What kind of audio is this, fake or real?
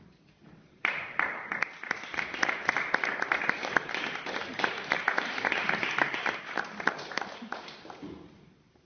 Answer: fake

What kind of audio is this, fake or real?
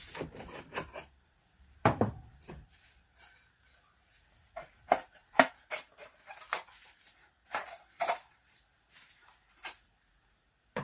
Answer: fake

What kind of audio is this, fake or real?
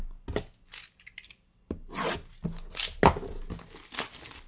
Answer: real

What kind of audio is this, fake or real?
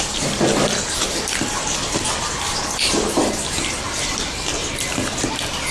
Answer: fake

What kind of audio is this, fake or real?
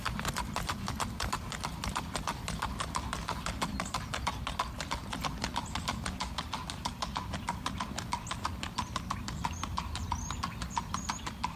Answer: real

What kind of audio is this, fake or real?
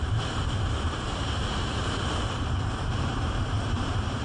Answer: fake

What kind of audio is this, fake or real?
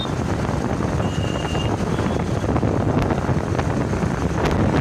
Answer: real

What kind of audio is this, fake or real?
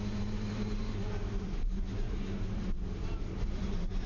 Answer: fake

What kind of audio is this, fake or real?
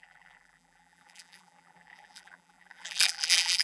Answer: fake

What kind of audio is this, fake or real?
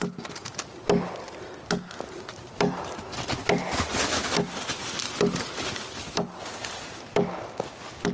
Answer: real